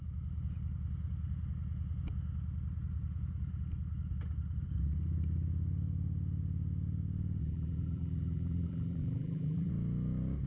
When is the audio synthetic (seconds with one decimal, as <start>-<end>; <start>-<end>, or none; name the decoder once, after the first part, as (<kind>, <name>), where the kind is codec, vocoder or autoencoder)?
7.4-9.7 (vocoder, BigVGAN v2)